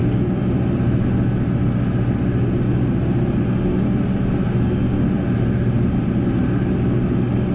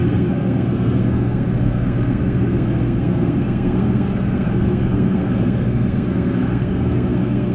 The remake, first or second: second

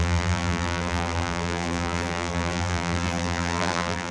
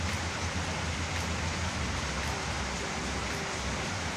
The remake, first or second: first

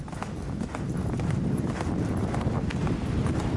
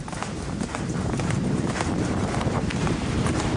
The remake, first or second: second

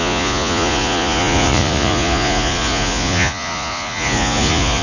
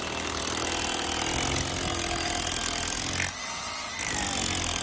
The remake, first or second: first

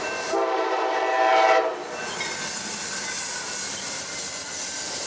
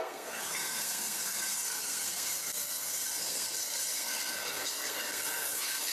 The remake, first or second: second